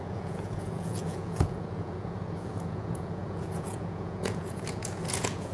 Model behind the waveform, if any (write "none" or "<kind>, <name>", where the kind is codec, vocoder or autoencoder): vocoder, Vocos